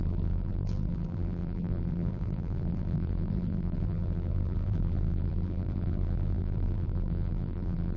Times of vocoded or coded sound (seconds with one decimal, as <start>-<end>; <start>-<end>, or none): 0.0-8.0